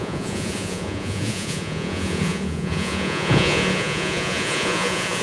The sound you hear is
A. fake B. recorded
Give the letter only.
A